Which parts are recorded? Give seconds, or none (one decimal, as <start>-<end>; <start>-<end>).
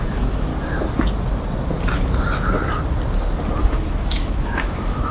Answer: 0.5-3.6